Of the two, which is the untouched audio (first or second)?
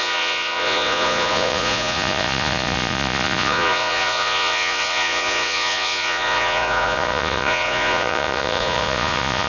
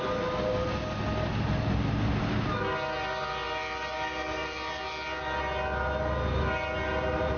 second